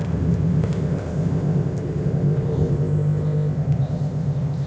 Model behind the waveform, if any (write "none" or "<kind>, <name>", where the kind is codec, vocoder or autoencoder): codec, ZipCodec